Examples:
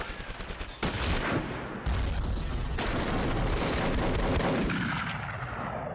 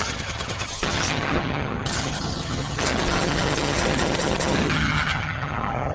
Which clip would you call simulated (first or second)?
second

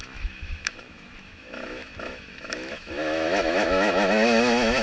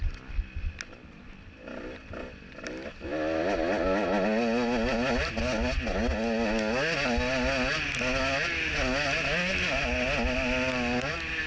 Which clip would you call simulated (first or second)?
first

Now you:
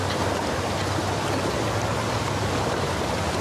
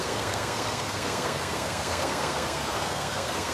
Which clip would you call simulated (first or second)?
second